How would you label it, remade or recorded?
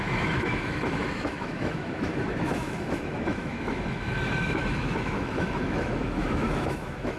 remade